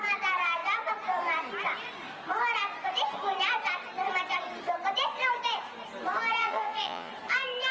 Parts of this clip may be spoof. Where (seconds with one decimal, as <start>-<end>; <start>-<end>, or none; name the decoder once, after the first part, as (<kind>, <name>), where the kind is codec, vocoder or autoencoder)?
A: 6.4-7.1 (vocoder, Vocos)